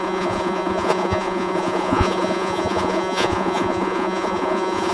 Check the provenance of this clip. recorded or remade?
remade